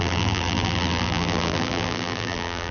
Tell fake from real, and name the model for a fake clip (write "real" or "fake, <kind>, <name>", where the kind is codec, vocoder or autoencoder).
fake, vocoder, BigVGAN v2